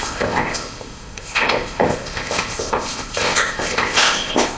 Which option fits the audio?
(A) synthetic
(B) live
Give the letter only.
A